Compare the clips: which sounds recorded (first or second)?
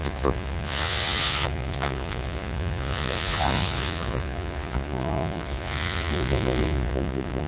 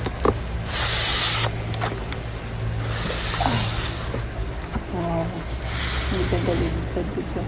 second